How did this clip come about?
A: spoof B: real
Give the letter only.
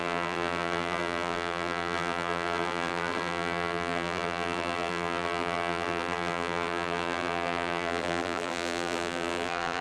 A